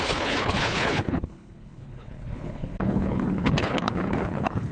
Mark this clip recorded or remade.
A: remade